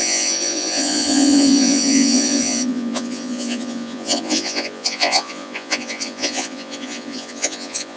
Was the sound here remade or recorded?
remade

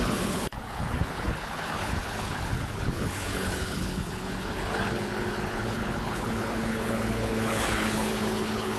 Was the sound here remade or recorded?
remade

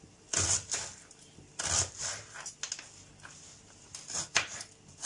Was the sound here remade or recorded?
recorded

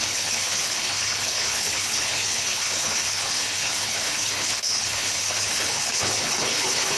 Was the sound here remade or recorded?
remade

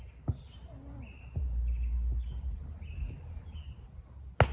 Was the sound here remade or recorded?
recorded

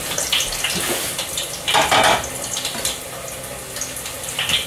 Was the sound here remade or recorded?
recorded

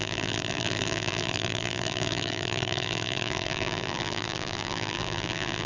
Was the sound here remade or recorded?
remade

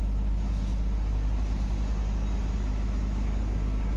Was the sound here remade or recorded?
recorded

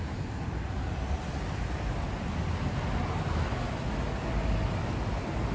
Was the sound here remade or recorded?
recorded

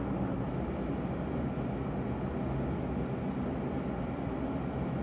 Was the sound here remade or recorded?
recorded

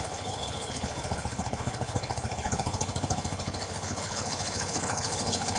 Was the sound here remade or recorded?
remade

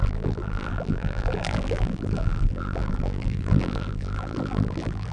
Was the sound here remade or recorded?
remade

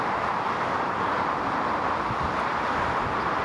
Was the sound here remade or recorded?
recorded